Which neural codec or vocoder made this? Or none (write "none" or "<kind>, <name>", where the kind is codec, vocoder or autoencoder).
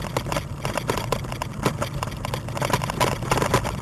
none